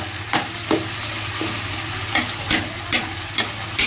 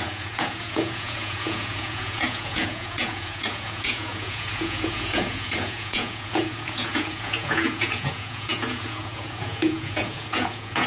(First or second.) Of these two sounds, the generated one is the second